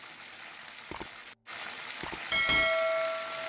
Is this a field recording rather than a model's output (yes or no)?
yes